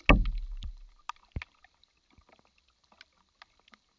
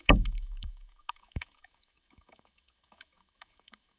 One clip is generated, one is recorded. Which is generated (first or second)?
second